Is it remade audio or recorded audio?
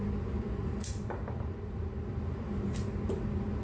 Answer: recorded